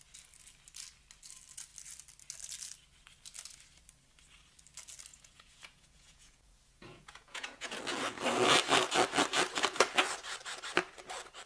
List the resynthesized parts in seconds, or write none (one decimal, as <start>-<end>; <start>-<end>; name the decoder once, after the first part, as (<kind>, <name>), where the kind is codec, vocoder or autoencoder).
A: 5.1-7.8 (vocoder, Vocos)